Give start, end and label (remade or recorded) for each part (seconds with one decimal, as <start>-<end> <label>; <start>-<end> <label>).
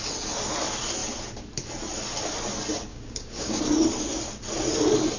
0.0-2.9 recorded; 2.9-3.6 remade; 3.6-5.2 recorded